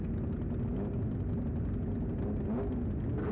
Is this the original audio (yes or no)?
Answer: yes